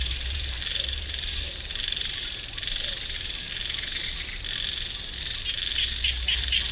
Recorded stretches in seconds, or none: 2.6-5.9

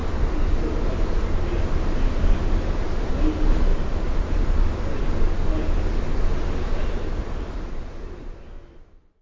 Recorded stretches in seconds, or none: 3.1-3.7; 4.8-7.2; 7.8-9.2

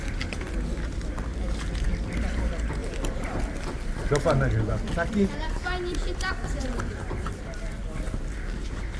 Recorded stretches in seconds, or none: 0.0-9.0

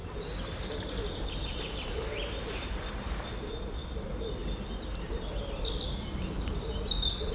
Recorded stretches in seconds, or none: 2.7-7.3

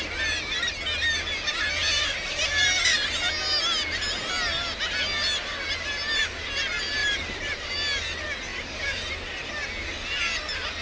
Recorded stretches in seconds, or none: 0.0-1.8; 2.5-7.0; 7.7-8.5; 9.1-10.8

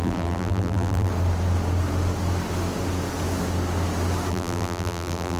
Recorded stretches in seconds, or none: 1.1-4.3